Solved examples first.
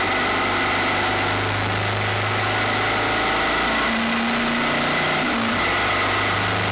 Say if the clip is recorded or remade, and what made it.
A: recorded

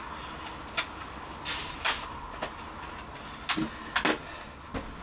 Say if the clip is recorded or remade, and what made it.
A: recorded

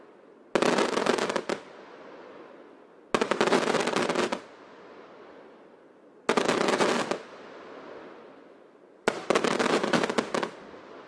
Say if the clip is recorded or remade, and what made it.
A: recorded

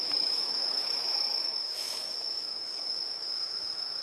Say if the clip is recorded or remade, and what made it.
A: remade, autoencoder, DAC-VAE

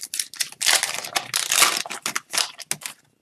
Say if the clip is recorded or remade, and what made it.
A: recorded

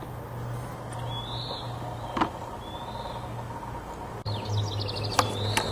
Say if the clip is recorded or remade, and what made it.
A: recorded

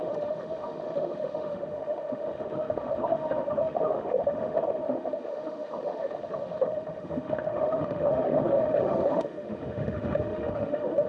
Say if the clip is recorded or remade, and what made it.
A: remade, autoencoder, DAC-VAE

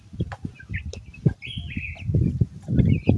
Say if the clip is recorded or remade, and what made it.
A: recorded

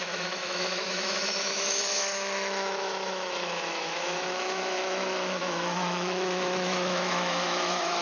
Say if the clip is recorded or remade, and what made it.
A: remade, autoencoder, DAC-VAE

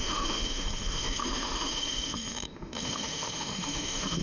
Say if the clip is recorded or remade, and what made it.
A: remade, autoencoder, DAC-VAE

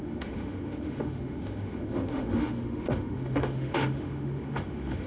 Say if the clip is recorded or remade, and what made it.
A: remade, autoencoder, DAC-VAE